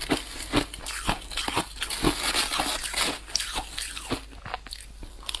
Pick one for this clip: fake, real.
real